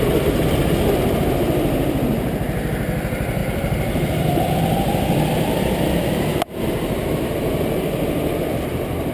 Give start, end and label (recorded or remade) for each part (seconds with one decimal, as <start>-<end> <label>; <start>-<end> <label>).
0.0-3.4 recorded; 3.4-8.6 remade; 8.6-9.1 recorded